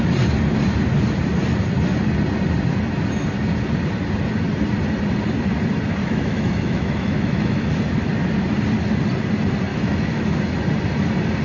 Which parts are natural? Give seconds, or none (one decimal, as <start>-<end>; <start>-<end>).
0.0-6.0; 7.7-9.7; 10.4-11.4